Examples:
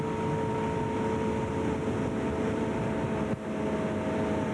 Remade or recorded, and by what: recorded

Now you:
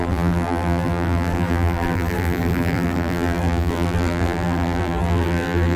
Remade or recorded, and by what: remade, vocoder, BigVGAN v2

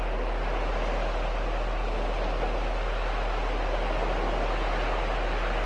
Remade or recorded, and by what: recorded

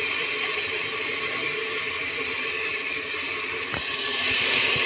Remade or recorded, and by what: remade, vocoder, BigVGAN v2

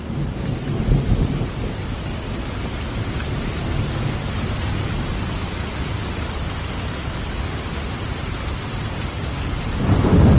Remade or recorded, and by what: recorded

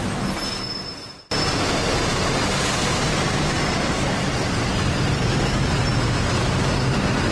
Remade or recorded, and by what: recorded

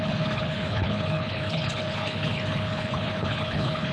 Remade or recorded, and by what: remade, codec, HILCodec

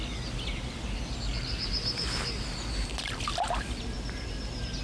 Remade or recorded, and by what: recorded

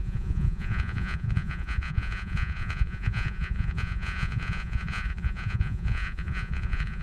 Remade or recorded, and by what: remade, vocoder, Vocos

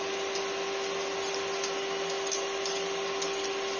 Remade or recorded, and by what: recorded